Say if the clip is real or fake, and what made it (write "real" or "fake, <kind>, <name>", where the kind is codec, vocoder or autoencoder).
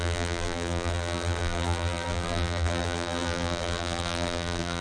fake, vocoder, BigVGAN v2